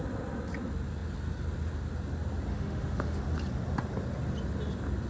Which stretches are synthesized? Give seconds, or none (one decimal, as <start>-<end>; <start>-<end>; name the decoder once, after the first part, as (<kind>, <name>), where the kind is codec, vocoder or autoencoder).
2.5-3.2 (autoencoder, DAC-VAE)